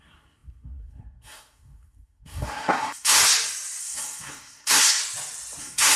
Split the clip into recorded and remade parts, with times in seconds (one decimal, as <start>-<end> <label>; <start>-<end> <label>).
0.0-3.2 remade; 3.2-3.8 recorded; 3.8-5.0 remade; 5.0-5.6 recorded; 5.6-6.0 remade